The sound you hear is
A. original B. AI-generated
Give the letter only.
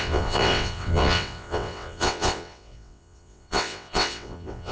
B